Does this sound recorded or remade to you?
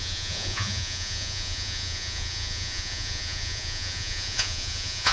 remade